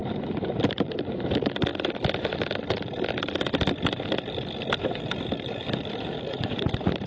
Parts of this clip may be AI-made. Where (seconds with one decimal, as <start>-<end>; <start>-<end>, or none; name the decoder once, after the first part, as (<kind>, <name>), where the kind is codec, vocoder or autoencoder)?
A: 0.0-0.9 (vocoder, BigVGAN v2); 4.8-7.1